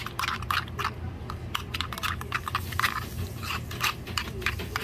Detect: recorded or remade recorded